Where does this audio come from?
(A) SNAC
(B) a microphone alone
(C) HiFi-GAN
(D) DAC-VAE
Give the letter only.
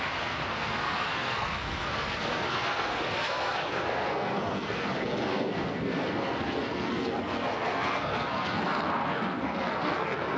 A